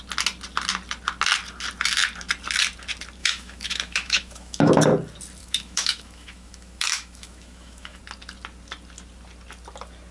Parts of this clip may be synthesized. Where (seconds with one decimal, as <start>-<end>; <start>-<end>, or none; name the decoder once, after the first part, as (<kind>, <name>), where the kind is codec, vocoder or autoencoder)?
3.2-4.7 (autoencoder, DAC-VAE); 5.4-8.0